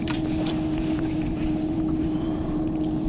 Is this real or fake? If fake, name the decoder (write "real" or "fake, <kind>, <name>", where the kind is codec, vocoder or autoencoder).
fake, vocoder, BigVGAN v2